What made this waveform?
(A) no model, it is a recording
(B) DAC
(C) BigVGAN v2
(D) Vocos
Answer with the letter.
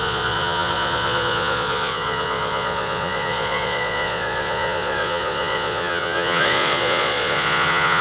D